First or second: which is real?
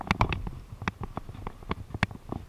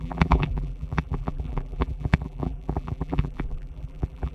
first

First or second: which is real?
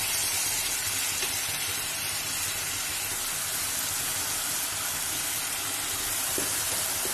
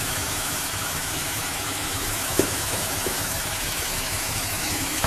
first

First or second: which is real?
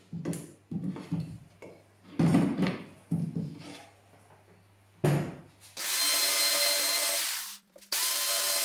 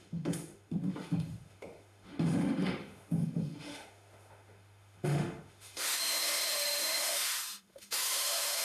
first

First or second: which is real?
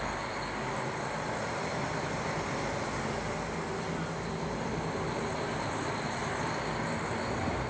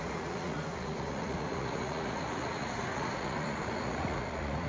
first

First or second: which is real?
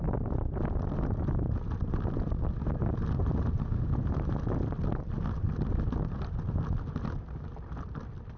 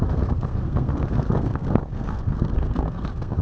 first